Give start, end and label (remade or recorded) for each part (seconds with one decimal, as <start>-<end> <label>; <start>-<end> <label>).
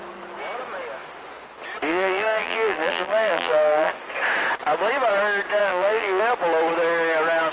0.0-1.9 recorded; 1.9-3.9 remade; 3.9-5.6 recorded; 5.6-6.2 remade; 6.2-7.5 recorded